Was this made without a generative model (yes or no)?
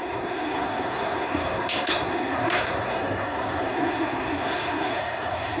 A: no